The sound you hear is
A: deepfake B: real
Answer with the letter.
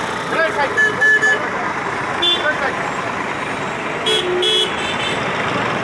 B